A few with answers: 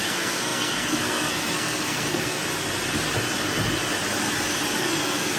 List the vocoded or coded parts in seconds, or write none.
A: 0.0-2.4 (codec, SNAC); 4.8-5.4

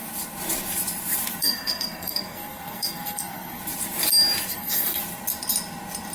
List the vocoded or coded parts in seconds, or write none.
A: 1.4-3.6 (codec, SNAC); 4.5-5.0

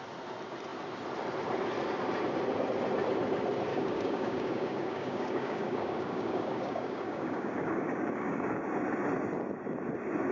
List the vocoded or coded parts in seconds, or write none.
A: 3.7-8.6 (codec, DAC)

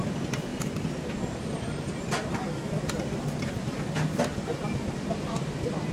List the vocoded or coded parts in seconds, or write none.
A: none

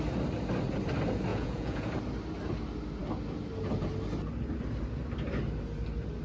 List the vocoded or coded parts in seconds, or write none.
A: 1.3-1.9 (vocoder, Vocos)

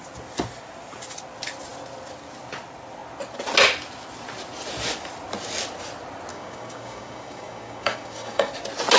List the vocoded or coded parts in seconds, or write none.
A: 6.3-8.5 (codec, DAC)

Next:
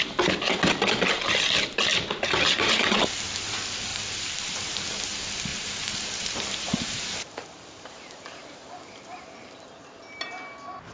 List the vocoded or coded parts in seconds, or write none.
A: 3.9-4.6 (vocoder, BigVGAN v2); 5.5-9.8

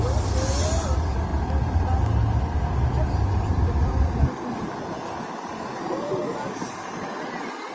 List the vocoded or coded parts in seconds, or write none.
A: none